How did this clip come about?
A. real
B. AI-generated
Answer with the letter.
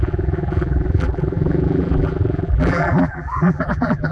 B